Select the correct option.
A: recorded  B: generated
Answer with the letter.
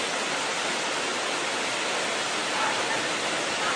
A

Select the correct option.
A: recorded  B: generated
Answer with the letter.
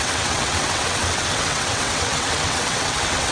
B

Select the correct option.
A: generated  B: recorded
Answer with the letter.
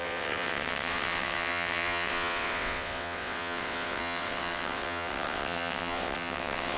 A